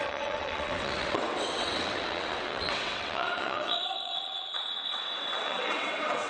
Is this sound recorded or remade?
remade